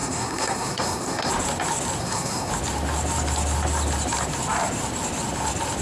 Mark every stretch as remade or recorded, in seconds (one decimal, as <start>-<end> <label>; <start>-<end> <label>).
0.0-1.3 remade; 1.3-2.0 recorded; 2.0-2.5 remade; 2.5-5.8 recorded